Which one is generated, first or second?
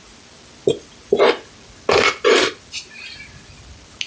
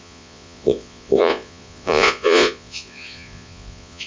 second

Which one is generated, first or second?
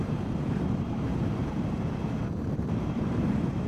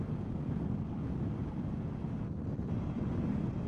first